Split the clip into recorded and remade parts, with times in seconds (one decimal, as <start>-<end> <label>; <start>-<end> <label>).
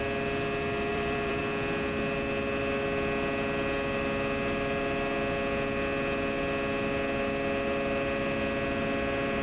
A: 0.0-0.9 recorded; 0.9-1.4 remade; 1.4-9.4 recorded